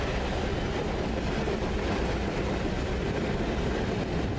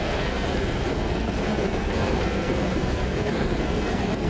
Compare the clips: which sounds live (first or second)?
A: first